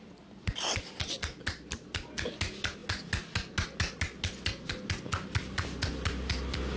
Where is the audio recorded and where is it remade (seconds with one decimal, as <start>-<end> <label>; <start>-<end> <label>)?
0.0-6.8 recorded